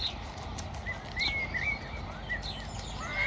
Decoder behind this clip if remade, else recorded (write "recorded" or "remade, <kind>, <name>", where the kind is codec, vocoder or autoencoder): recorded